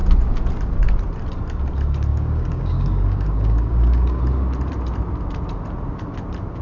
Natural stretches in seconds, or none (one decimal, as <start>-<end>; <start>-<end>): 0.0-2.1; 4.2-6.6

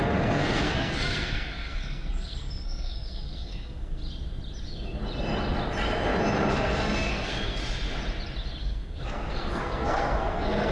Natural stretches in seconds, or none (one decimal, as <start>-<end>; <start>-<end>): 4.0-6.5; 7.6-8.6

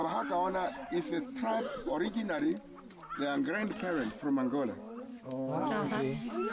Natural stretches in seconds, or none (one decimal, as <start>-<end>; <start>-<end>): 0.0-5.1

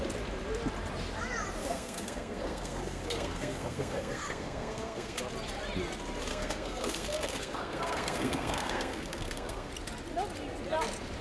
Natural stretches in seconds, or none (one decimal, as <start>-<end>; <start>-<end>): 0.0-1.6; 5.2-6.3; 9.7-11.2

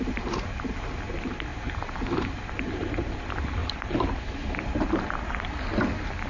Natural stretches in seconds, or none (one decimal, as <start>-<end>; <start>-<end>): 0.0-1.5; 3.2-3.6; 4.5-6.3

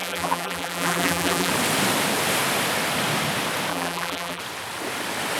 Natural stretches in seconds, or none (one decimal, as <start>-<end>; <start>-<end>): 1.5-3.7; 4.4-5.4

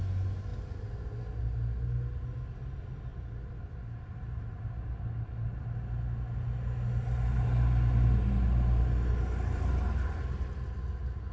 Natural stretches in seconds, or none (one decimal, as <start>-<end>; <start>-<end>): 0.0-11.3

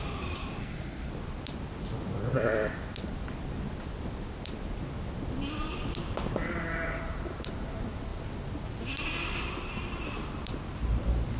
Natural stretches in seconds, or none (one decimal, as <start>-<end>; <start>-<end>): 0.0-0.6; 1.1-11.4